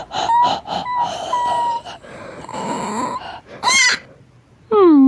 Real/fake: real